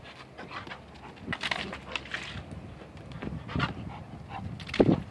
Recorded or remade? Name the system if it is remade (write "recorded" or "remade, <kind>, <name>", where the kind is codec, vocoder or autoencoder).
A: recorded